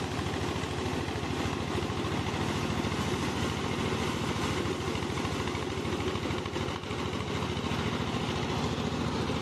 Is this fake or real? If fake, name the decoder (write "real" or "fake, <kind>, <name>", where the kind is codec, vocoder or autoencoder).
real